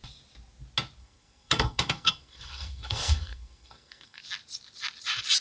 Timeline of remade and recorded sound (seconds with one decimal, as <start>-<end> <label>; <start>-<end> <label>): 0.0-1.0 recorded; 1.0-4.2 remade; 4.2-5.4 recorded

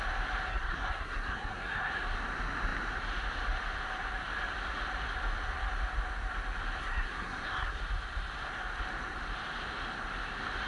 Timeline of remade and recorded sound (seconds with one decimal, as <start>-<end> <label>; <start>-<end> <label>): 0.0-0.5 recorded; 0.5-1.9 remade; 1.9-6.8 recorded; 6.8-7.8 remade; 7.8-10.7 recorded

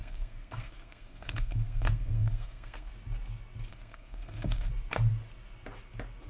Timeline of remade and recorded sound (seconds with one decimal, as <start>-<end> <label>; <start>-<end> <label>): 0.0-2.9 remade; 2.9-3.7 recorded; 3.7-4.7 remade; 4.7-6.3 recorded